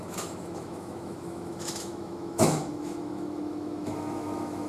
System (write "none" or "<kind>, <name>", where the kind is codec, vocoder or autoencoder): autoencoder, DAC-VAE